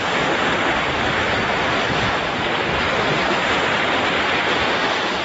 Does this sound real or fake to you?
real